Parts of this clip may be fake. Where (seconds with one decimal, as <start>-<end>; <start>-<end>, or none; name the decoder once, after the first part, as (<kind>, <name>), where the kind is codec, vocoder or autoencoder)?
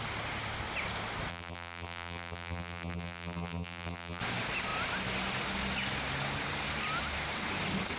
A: 1.3-4.2 (vocoder, BigVGAN v2)